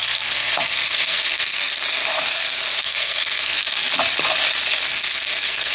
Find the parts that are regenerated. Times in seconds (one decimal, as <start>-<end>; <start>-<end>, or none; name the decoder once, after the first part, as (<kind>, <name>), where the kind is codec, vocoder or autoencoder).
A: 0.0-1.8 (codec, SNAC); 2.8-3.9; 4.9-5.7